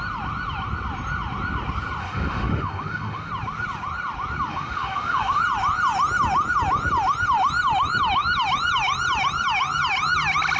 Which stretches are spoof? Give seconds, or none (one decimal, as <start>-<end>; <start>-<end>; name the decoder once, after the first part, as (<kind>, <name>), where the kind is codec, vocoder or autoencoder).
2.0-3.3 (autoencoder, DAC-VAE); 4.5-5.4